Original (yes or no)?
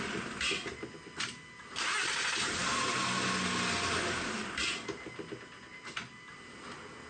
yes